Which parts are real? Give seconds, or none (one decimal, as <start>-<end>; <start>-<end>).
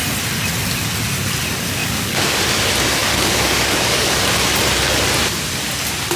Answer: 0.0-1.8; 2.4-3.0; 4.2-6.2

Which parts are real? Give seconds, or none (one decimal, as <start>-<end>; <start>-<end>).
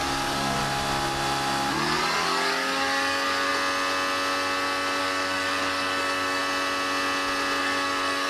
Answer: 0.6-1.7; 3.5-5.0; 6.4-7.6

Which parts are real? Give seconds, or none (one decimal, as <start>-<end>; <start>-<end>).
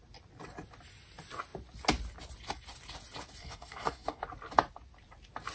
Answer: 0.0-3.4; 4.2-5.5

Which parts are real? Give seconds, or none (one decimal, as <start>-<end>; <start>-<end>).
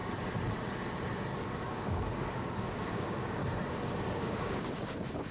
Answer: 0.0-1.5; 3.4-4.1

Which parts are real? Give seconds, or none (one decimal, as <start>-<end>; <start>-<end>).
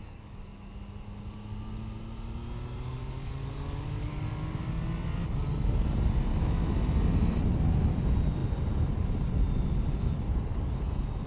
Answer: 0.7-3.0; 4.2-11.3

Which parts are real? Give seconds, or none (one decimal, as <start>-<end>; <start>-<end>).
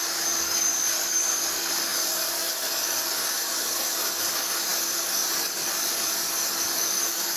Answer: none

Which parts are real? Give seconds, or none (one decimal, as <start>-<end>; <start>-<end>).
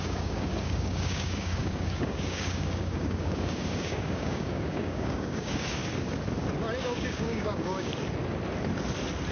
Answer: 5.8-6.8; 7.9-9.3